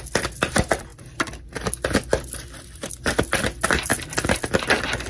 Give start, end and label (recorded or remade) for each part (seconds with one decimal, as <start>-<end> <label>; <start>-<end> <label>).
0.0-5.1 recorded